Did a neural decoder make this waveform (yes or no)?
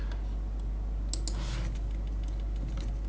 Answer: no